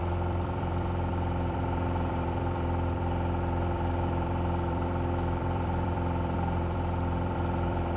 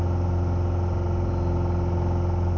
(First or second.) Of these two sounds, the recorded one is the second